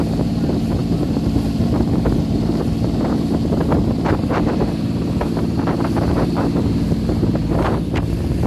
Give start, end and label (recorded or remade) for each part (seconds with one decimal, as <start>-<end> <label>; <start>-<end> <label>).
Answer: 0.0-8.5 remade